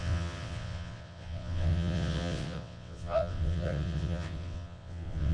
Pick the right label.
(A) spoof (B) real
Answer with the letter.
A